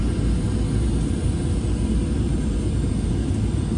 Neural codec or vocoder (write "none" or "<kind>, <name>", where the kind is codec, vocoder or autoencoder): none